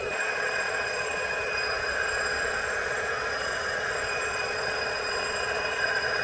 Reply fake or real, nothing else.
fake